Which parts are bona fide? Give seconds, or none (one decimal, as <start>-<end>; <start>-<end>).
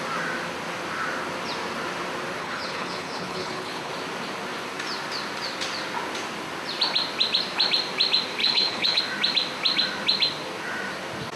0.0-2.4; 3.9-8.4; 9.0-11.4